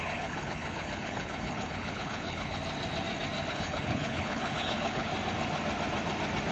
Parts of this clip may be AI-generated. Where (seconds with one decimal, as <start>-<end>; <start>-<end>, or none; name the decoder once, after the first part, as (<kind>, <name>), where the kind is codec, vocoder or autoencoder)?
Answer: 0.0-2.6 (codec, HILCodec); 3.5-5.1